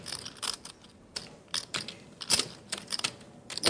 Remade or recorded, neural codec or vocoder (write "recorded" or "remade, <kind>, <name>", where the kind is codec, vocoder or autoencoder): recorded